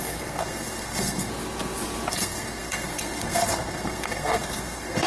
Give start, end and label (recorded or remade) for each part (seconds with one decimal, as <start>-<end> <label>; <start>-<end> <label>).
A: 0.0-1.3 remade; 1.3-2.1 recorded; 2.1-5.1 remade